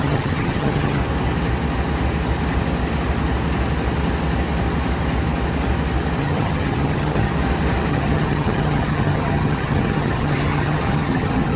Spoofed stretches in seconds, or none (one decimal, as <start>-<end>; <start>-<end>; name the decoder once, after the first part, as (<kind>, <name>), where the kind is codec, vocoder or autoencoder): 0.0-1.0 (vocoder, HiFi-GAN); 6.2-7.3; 7.9-11.6